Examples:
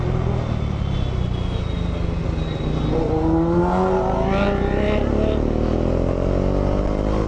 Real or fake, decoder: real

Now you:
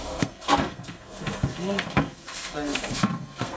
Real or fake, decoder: fake, codec, SNAC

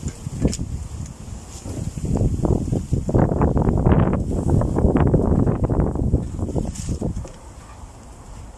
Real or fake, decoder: real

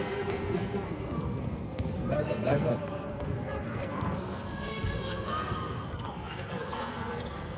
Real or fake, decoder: fake, codec, SNAC